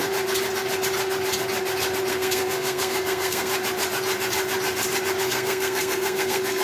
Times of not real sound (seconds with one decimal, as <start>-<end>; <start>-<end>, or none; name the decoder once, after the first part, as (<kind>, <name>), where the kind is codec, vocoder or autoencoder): 2.1-3.5 (codec, SNAC); 5.2-6.6